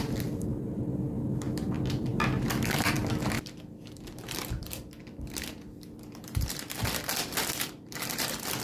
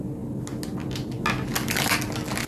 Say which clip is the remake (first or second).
first